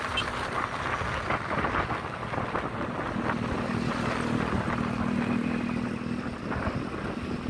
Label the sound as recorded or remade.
recorded